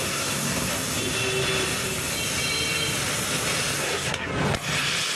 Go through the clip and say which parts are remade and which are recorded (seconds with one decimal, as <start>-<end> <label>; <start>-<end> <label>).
0.0-0.7 remade; 0.7-3.8 recorded; 3.8-4.3 remade; 4.3-5.2 recorded